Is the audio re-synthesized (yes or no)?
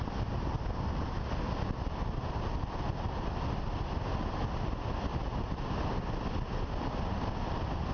no